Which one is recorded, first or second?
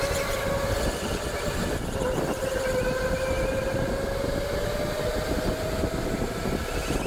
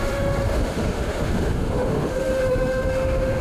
first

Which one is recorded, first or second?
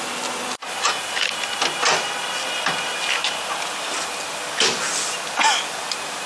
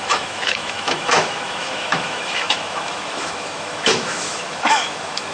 first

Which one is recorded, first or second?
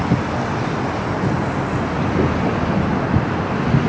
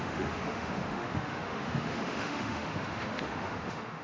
first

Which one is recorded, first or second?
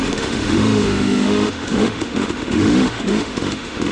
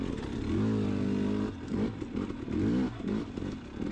second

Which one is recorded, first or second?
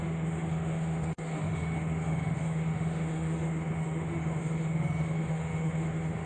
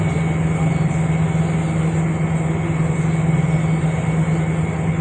second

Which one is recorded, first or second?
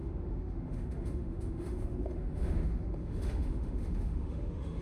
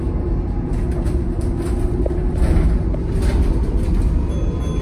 second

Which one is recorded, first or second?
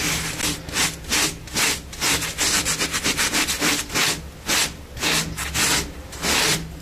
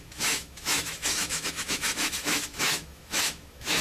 first